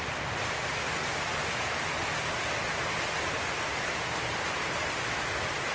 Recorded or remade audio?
recorded